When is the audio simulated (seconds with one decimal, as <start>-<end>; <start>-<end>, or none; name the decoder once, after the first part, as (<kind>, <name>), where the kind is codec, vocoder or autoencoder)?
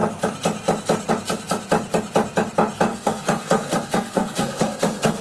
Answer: 2.9-5.2 (codec, SNAC)